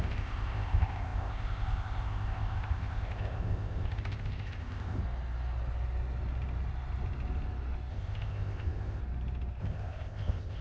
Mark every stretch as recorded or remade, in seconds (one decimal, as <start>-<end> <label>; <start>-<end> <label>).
0.0-5.0 remade; 5.0-7.9 recorded; 7.9-9.0 remade; 9.0-9.6 recorded; 9.6-10.6 remade